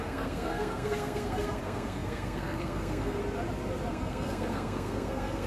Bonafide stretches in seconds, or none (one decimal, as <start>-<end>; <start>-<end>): 3.2-3.9